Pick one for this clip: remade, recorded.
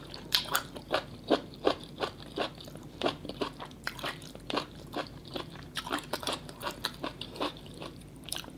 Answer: remade